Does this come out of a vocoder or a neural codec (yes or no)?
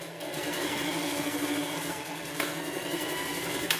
yes